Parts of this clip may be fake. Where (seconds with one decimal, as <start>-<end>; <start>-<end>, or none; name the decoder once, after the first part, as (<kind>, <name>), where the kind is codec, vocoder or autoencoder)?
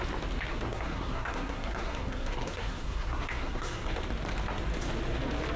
0.5-3.9 (codec, SNAC)